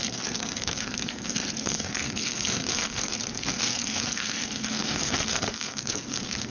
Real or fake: fake